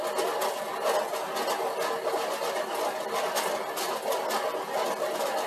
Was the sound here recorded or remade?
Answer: recorded